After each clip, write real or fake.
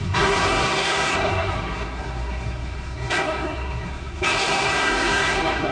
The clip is fake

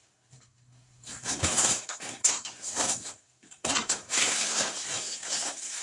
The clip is fake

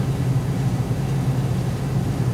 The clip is real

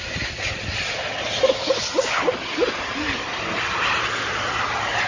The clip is real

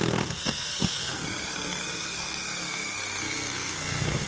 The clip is fake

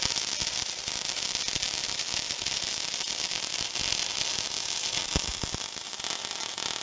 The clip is real